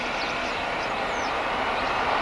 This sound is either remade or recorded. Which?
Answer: recorded